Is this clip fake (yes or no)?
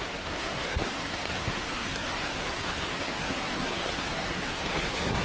yes